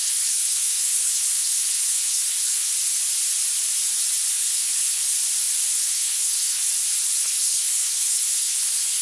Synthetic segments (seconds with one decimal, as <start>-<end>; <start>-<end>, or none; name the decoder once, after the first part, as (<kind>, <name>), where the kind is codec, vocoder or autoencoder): 0.0-2.7 (codec, HILCodec); 4.3-5.1; 5.8-6.7; 7.2-9.0